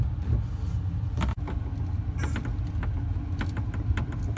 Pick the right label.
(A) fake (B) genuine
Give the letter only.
B